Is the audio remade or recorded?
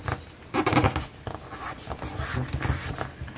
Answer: recorded